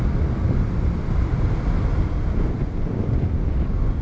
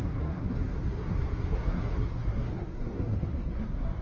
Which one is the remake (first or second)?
second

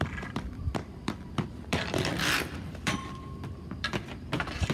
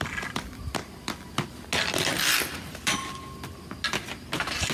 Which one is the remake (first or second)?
first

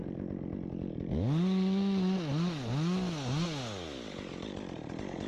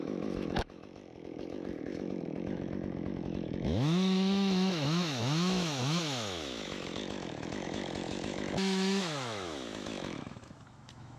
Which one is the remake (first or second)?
second